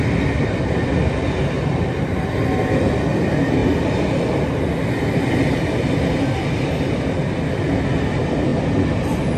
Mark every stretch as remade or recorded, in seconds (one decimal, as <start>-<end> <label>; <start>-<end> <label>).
0.0-9.4 recorded